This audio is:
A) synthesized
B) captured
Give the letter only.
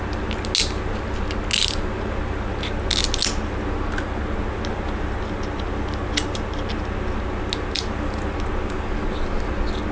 B